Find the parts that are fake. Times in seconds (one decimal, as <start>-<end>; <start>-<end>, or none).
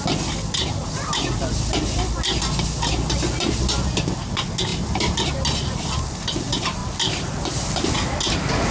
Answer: none